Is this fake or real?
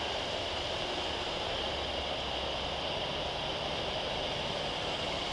fake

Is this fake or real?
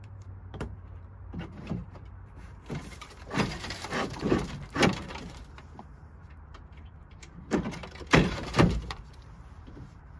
fake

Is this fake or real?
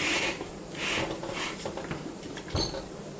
real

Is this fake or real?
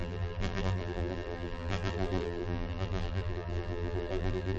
fake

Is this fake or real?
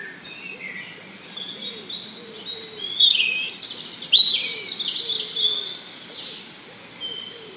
real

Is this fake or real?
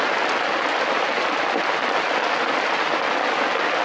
real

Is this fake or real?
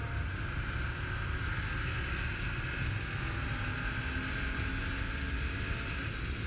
real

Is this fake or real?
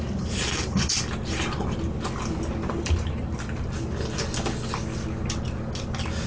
real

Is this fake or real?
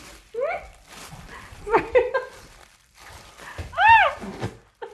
fake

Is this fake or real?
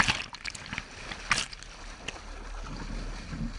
real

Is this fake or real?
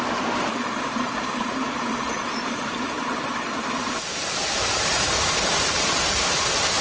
fake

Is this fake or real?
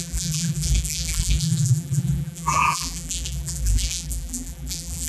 fake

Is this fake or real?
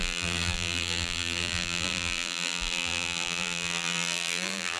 fake